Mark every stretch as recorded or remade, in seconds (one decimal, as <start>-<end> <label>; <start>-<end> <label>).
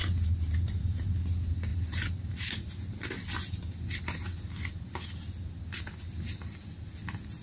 0.0-1.1 remade; 1.1-1.7 recorded; 1.7-2.9 remade; 2.9-7.4 recorded